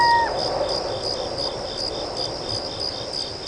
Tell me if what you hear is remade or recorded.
recorded